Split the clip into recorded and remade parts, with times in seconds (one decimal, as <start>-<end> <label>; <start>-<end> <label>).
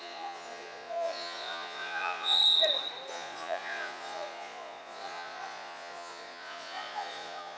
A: 0.0-2.4 remade; 2.4-3.1 recorded; 3.1-7.6 remade